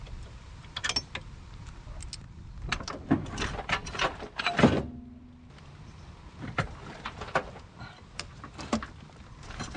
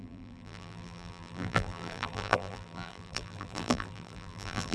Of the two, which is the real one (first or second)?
first